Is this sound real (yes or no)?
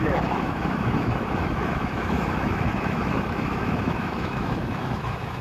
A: no